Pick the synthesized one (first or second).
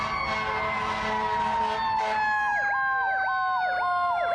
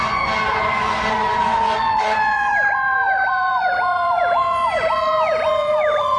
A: second